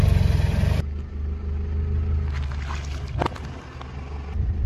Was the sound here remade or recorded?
recorded